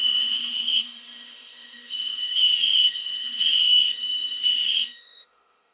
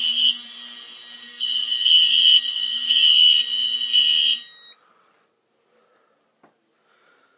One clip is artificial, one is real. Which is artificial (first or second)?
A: first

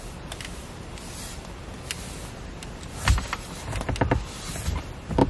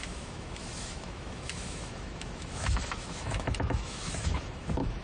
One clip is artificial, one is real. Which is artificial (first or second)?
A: second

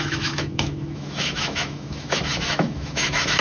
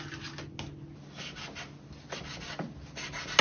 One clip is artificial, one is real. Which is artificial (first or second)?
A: first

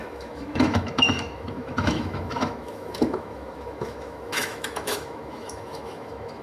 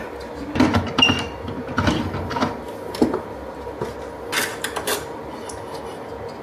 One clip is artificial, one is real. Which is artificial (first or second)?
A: first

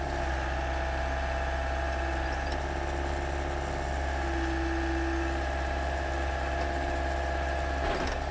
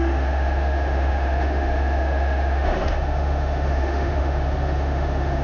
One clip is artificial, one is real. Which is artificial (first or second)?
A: second